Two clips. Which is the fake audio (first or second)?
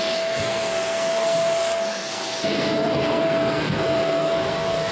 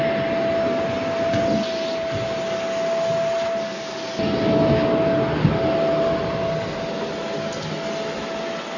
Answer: first